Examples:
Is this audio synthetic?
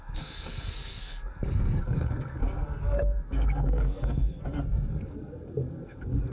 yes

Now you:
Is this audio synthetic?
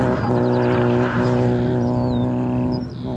no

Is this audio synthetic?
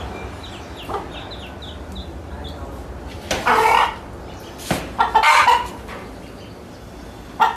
no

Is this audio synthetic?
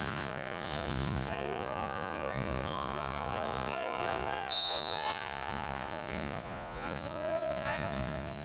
yes